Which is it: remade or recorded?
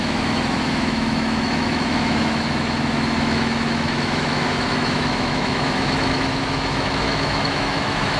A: remade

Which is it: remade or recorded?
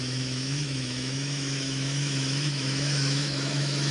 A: remade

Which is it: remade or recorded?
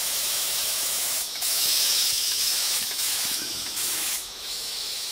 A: remade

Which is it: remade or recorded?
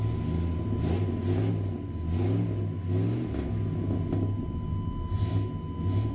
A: recorded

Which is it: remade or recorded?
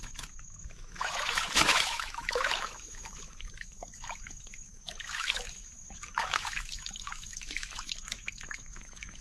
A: remade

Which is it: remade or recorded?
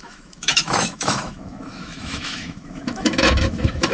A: remade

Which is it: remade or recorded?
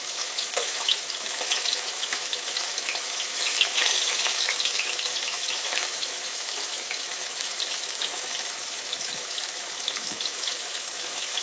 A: remade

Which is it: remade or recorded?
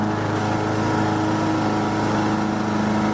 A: recorded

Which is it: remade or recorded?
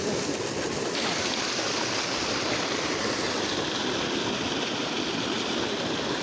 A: recorded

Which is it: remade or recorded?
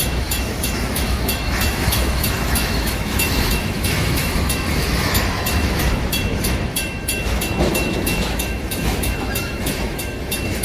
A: remade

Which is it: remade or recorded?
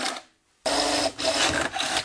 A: recorded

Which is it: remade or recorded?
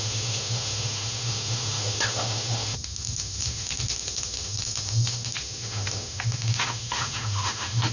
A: remade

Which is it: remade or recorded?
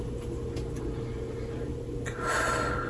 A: recorded